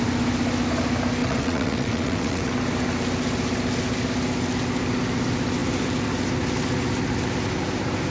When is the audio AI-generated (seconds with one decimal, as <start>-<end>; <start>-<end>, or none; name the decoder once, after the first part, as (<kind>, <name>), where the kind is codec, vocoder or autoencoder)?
1.2-2.5 (vocoder, WaveNeXt)